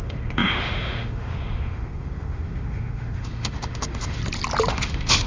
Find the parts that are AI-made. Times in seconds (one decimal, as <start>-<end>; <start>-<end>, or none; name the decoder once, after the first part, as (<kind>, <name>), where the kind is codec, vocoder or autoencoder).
0.0-4.2 (autoencoder, DAC-VAE); 4.7-5.3